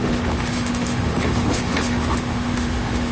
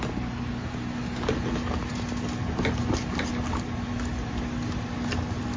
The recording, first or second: second